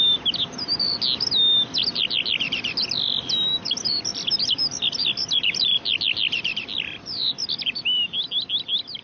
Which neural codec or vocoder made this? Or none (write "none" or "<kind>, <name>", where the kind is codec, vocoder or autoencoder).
none